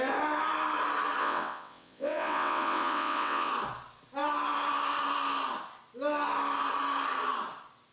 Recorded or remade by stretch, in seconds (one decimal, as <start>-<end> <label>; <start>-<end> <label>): 0.0-1.2 recorded; 1.2-3.5 remade; 3.5-7.9 recorded